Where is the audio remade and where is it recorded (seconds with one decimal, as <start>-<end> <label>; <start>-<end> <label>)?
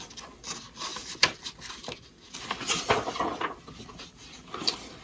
0.0-5.0 recorded